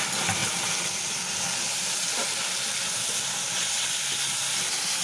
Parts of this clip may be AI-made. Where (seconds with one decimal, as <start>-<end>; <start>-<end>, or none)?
none